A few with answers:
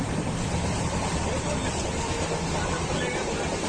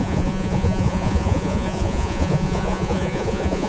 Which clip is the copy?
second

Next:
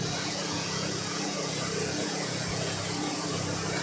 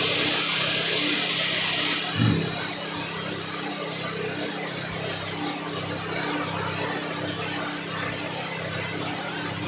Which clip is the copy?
first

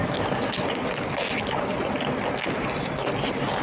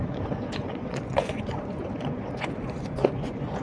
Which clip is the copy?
second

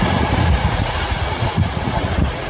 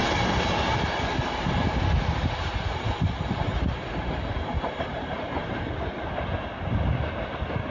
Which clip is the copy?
first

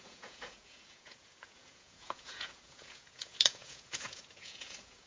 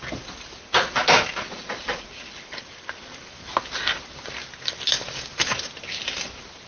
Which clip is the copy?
first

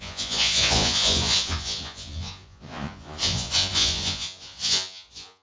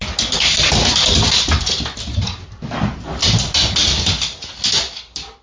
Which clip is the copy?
first